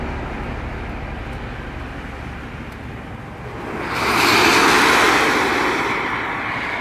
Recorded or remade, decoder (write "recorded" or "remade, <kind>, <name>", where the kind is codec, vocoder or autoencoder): recorded